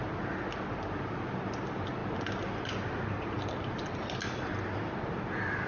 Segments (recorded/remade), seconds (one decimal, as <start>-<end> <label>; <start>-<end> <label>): 0.0-5.7 recorded